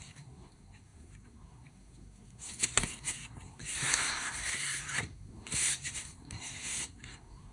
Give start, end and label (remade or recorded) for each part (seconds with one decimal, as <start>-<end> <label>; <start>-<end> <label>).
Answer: 0.0-7.5 remade